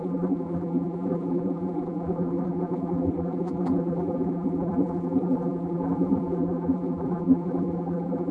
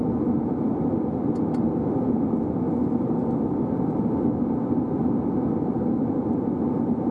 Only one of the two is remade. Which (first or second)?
first